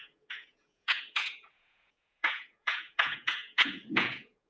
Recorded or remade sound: remade